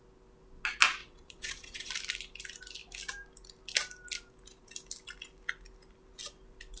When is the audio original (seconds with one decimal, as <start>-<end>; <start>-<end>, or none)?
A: 0.0-1.0; 1.9-6.8

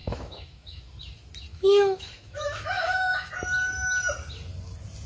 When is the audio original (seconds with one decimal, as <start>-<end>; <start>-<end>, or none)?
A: 0.8-1.5; 3.3-5.1